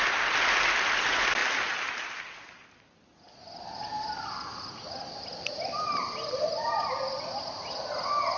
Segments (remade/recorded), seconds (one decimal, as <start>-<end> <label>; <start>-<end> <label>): 0.0-1.4 recorded; 1.4-2.2 remade; 2.2-8.4 recorded